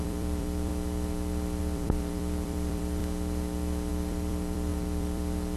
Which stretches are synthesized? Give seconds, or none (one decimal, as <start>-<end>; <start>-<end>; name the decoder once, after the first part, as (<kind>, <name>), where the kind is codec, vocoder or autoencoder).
0.0-0.7 (vocoder, BigVGAN v2); 1.6-3.0; 3.9-5.6